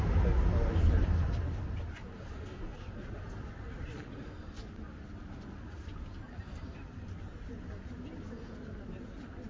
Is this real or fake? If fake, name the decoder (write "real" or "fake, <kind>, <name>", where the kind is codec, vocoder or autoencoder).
real